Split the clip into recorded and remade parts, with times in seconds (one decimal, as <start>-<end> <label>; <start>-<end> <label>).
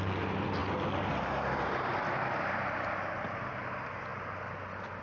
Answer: 0.0-5.0 recorded